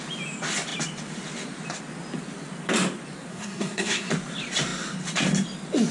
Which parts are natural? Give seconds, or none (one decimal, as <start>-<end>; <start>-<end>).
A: 0.0-3.3; 4.1-5.9